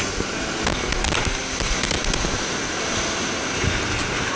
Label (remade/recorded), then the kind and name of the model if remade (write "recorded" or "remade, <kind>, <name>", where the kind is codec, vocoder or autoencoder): recorded